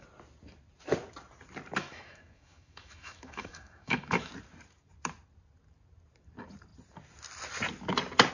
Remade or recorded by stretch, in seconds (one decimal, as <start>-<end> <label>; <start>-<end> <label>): 0.0-1.8 recorded; 1.8-4.3 remade; 4.3-8.3 recorded